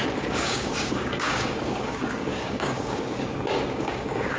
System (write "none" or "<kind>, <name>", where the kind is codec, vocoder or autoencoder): codec, DAC